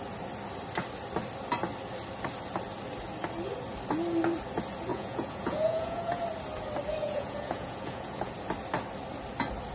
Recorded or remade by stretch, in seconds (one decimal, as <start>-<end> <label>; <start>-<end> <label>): 0.0-4.9 recorded; 4.9-6.2 remade; 6.2-7.0 recorded; 7.0-8.3 remade; 8.3-9.7 recorded